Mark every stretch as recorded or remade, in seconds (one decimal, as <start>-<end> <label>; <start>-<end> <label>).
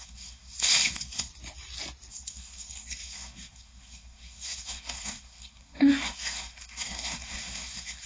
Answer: 0.0-1.3 remade; 1.3-2.1 recorded; 2.1-8.1 remade